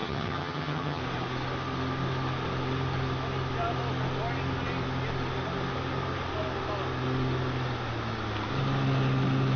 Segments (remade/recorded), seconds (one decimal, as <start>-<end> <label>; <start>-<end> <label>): 0.0-1.0 remade; 1.0-9.6 recorded